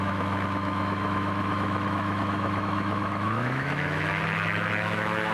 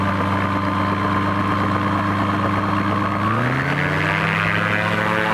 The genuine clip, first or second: second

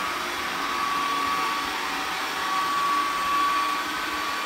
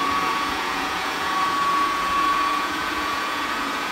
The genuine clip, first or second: first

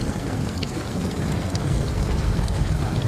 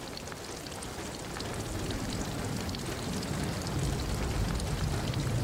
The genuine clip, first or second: second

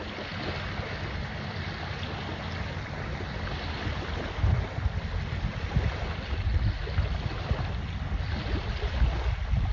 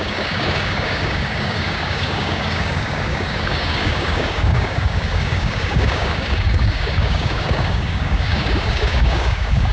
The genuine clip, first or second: first